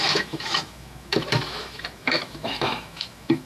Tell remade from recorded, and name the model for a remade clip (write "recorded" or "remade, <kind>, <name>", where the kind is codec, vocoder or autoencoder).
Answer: remade, autoencoder, DAC-VAE